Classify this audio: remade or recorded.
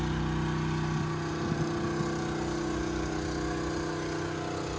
recorded